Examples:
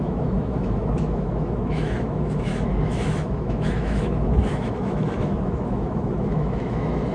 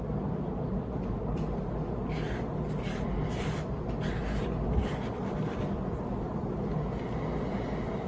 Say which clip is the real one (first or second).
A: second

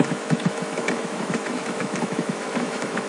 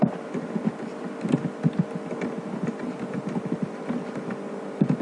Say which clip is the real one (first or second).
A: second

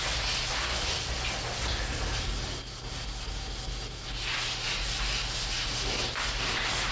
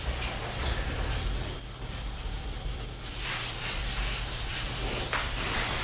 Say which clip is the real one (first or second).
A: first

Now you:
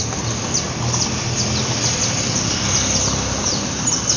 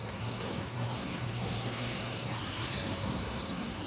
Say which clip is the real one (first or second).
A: first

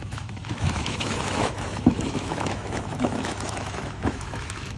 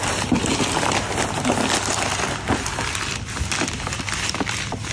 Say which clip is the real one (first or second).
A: second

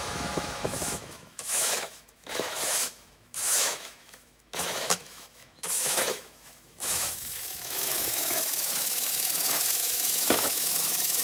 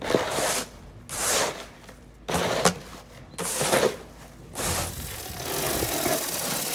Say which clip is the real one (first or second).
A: second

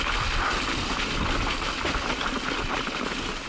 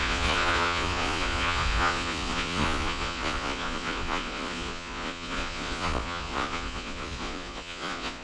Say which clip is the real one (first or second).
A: first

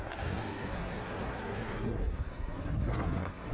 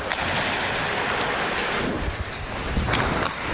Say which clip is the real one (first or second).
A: second